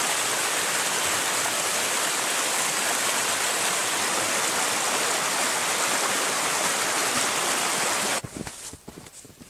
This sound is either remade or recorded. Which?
recorded